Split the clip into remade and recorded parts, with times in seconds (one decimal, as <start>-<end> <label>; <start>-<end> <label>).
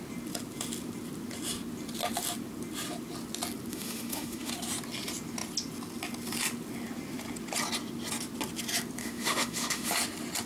0.0-3.7 recorded; 3.7-4.5 remade; 4.5-9.0 recorded; 9.0-9.9 remade; 9.9-10.5 recorded